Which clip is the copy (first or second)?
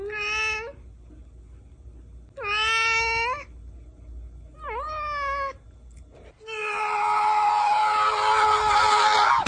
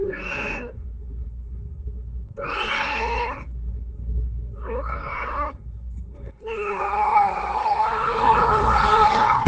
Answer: second